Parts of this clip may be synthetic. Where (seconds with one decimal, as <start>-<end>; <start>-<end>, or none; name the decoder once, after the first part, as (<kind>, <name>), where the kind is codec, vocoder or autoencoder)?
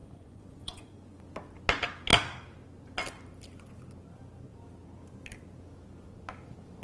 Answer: 0.0-1.2 (vocoder, Vocos)